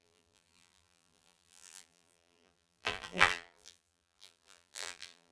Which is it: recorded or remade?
remade